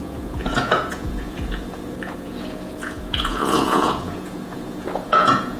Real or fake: fake